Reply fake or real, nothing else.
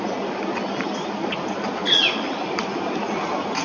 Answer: real